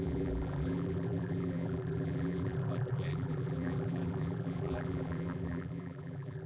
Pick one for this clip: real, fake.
fake